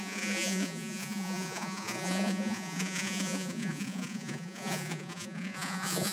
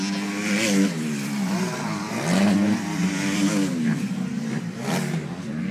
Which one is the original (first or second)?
second